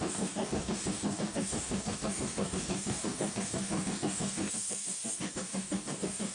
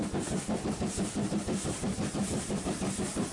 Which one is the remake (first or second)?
first